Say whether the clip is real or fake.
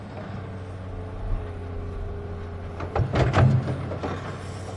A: real